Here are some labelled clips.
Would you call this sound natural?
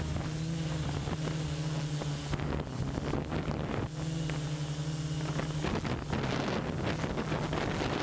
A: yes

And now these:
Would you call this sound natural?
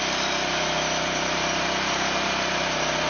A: yes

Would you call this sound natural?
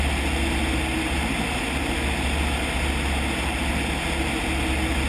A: yes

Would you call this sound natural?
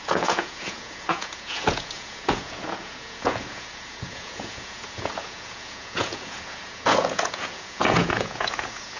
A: no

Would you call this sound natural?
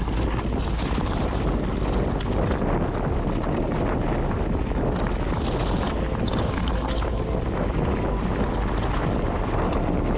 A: yes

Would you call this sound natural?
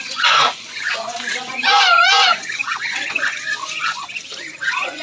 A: no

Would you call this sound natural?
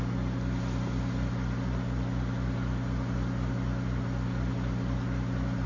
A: yes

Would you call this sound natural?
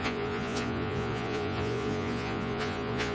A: no